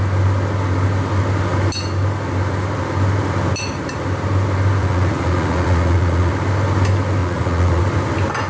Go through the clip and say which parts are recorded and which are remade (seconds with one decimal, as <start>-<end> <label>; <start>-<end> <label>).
0.0-4.8 recorded; 4.8-6.3 remade; 6.3-7.2 recorded; 7.2-7.8 remade; 7.8-8.5 recorded